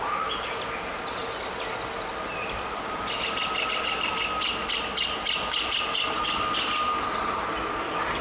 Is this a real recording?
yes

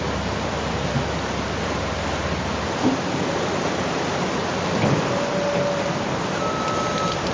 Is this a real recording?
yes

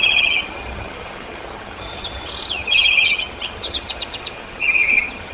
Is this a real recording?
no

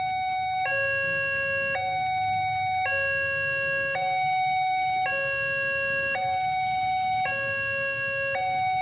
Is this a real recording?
yes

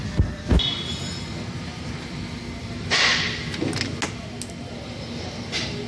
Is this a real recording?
yes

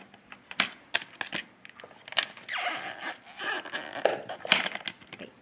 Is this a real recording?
yes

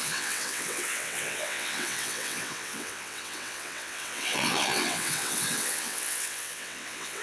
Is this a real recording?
no